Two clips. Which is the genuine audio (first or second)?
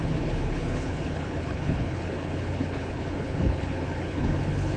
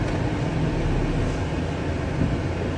second